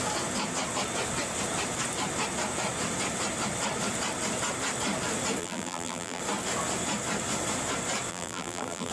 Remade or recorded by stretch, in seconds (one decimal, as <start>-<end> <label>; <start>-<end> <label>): 0.0-5.4 recorded; 5.4-6.2 remade; 6.2-8.1 recorded; 8.1-8.9 remade

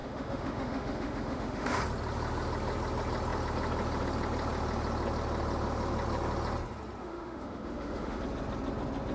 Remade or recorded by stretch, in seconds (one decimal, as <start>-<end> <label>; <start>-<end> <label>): 0.0-1.8 remade; 1.8-7.0 recorded; 7.0-8.2 remade; 8.2-9.1 recorded

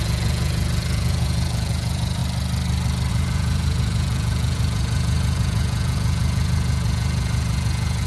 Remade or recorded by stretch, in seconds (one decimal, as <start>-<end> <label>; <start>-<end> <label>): 0.0-2.2 remade; 2.2-3.1 recorded; 3.1-8.1 remade

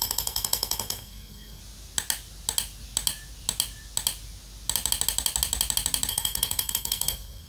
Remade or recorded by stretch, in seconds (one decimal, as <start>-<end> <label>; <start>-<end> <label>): 0.0-1.6 remade; 1.6-6.1 recorded; 6.1-7.5 remade

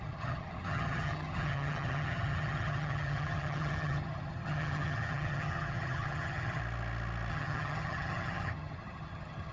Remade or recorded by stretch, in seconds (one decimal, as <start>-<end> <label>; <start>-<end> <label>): 0.0-6.6 remade; 6.6-7.3 recorded; 7.3-9.5 remade